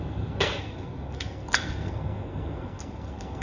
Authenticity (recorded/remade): remade